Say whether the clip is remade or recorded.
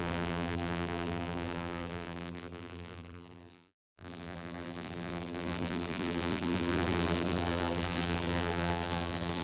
remade